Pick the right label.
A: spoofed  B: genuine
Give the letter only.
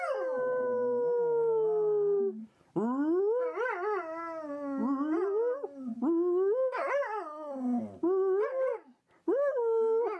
B